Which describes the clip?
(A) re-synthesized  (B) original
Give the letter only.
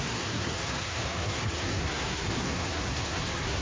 A